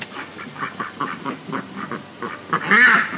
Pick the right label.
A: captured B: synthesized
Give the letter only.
A